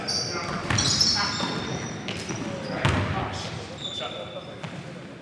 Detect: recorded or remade recorded